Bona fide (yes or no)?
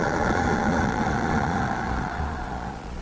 no